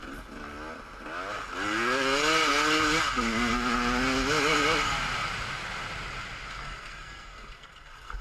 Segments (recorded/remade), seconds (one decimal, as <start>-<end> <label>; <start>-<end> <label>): 0.0-6.6 recorded; 6.6-8.2 remade